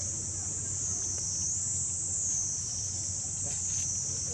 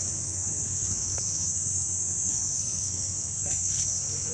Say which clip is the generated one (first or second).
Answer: second